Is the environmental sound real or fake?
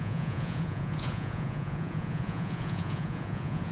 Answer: fake